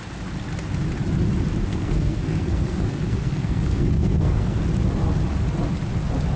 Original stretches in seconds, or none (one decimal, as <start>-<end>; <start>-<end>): 0.0-1.7; 4.6-6.4